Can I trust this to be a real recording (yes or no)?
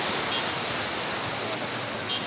yes